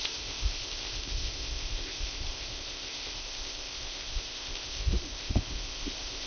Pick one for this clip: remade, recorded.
remade